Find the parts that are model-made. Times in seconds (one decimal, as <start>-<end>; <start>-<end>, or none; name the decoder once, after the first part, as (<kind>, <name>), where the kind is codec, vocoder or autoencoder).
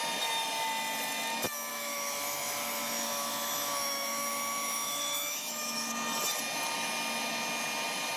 1.7-5.9 (autoencoder, DAC-VAE)